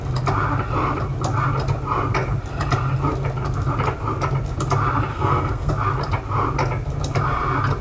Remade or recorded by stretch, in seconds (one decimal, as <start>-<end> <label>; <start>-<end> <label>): 0.0-5.1 recorded; 5.1-5.7 remade; 5.7-7.8 recorded